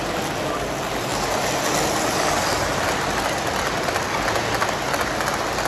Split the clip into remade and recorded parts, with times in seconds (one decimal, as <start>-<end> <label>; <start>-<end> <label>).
0.0-5.7 recorded